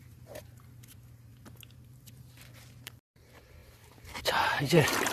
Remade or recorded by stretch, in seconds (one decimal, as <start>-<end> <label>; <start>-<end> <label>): 0.0-1.3 remade; 1.3-1.8 recorded; 1.8-5.1 remade